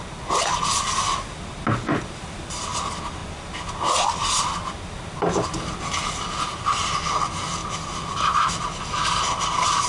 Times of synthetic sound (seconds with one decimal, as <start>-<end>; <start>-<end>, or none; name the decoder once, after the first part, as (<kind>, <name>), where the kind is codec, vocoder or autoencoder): none